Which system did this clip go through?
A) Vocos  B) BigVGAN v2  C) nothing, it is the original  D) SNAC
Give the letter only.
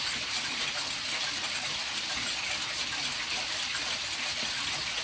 C